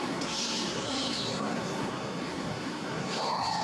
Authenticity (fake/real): fake